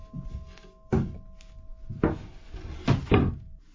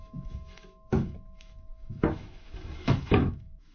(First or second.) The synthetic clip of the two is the second